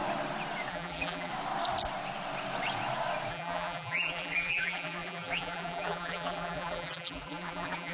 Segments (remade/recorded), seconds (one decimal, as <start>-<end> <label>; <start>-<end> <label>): 0.0-0.7 recorded; 0.7-1.3 remade; 1.3-3.3 recorded; 3.3-7.9 remade